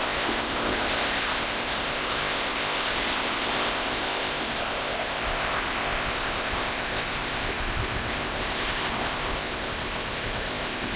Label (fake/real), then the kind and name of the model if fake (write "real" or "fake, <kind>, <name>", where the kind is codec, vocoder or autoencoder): fake, codec, ZipCodec